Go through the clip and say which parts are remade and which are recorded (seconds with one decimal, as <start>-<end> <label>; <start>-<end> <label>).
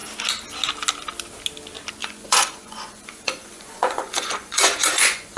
0.0-2.0 recorded; 2.0-5.4 remade